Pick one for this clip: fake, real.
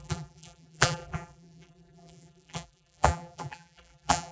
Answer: fake